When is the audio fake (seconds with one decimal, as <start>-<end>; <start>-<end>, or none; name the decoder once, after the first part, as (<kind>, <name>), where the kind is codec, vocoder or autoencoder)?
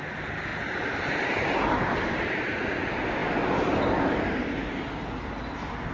none